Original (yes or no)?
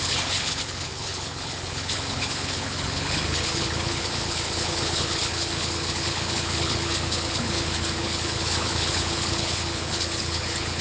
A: no